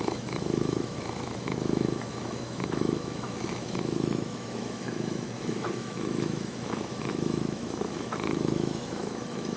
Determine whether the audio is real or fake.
fake